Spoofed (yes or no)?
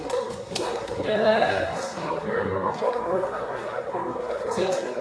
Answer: yes